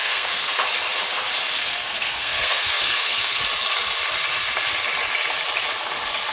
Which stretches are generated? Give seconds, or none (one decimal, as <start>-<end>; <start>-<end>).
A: 0.0-0.5; 1.6-3.4